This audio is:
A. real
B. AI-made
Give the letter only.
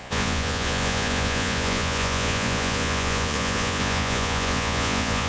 B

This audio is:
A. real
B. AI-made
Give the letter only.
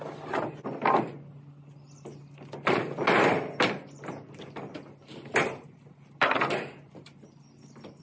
A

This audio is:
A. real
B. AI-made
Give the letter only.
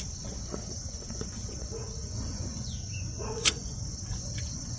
B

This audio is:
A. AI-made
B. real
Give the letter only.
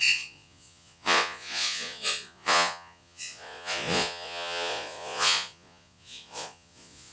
A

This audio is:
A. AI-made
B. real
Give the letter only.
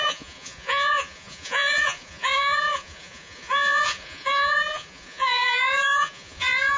A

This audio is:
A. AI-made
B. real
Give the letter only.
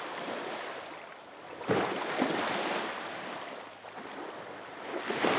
B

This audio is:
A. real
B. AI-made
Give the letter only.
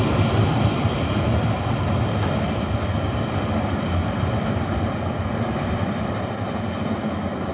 A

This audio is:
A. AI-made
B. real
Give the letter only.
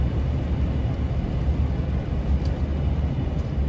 B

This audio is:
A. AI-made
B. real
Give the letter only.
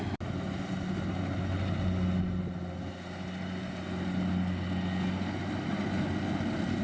B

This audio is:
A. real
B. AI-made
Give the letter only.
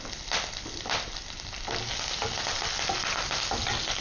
A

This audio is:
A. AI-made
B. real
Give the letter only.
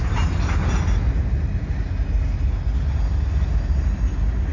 B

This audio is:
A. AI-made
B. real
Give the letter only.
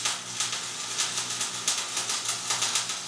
B